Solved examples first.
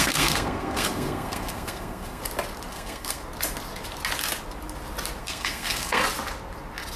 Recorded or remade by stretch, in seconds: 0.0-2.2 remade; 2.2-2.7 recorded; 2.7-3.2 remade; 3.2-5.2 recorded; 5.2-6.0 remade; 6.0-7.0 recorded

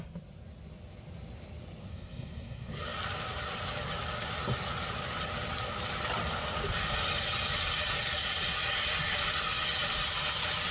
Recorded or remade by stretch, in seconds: 0.0-1.9 recorded; 1.9-2.7 remade; 2.7-10.7 recorded

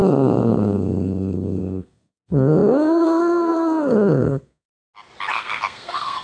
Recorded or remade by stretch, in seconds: 0.0-4.7 remade; 4.7-5.3 recorded; 5.3-6.2 remade

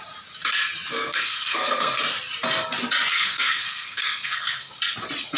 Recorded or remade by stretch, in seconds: 0.0-0.9 recorded; 0.9-2.0 remade; 2.0-3.1 recorded; 3.1-4.7 remade; 4.7-5.4 recorded

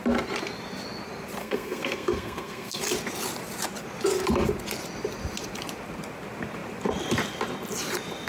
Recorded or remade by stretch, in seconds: 0.0-1.4 recorded; 1.4-2.8 remade; 2.8-8.3 recorded

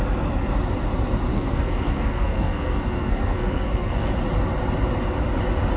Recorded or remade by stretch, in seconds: 0.0-1.3 recorded; 1.3-4.1 remade; 4.1-5.8 recorded

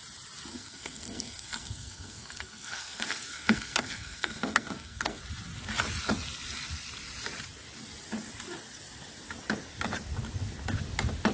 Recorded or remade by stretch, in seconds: 0.0-0.5 recorded; 0.5-5.2 remade; 5.2-11.3 recorded